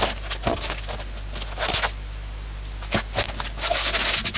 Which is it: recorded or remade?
recorded